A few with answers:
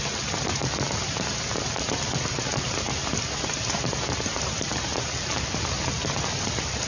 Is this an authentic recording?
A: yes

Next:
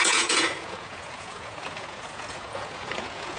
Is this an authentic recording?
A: no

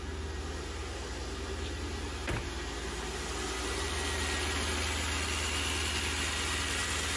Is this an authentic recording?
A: yes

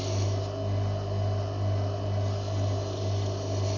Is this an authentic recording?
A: yes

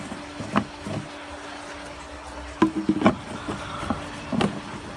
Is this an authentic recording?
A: yes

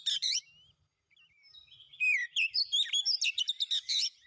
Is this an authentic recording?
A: yes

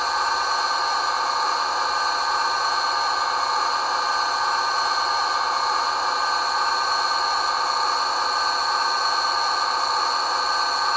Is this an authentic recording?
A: yes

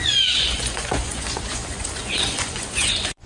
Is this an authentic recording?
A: no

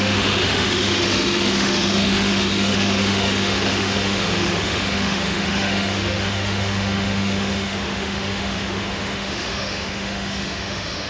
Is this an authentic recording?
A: no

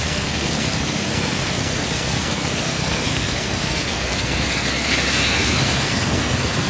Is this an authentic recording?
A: no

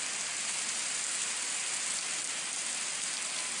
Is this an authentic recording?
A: yes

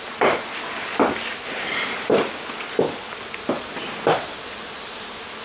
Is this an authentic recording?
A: yes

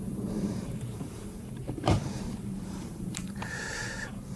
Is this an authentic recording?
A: no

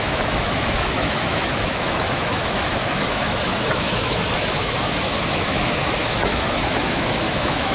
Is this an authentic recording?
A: no